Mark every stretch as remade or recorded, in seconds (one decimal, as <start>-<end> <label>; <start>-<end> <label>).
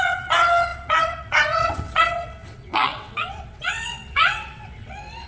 0.0-5.3 remade